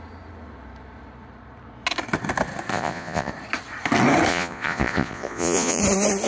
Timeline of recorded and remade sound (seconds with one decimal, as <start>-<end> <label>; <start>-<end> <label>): 0.0-2.7 recorded; 2.7-3.3 remade; 3.3-4.3 recorded; 4.3-5.8 remade; 5.8-6.3 recorded